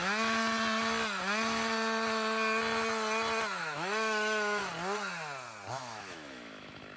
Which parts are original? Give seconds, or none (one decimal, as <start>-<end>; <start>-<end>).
0.0-3.6; 4.6-5.7